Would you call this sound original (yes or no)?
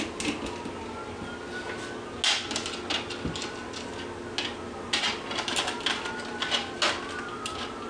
yes